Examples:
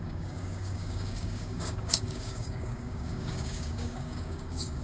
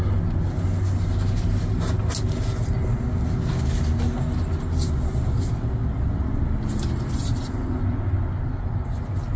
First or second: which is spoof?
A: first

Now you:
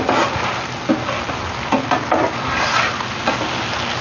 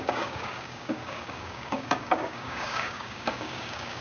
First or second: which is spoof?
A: second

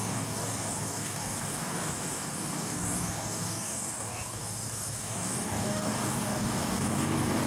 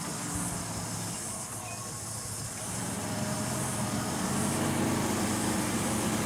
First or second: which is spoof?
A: first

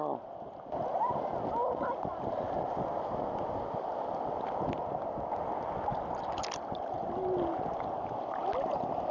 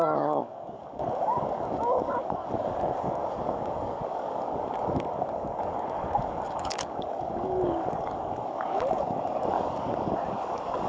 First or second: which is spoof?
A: second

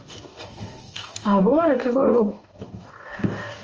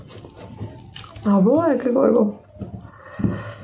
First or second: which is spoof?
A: first